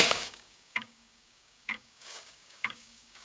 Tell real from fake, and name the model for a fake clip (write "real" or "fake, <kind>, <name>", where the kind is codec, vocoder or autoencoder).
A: fake, codec, DAC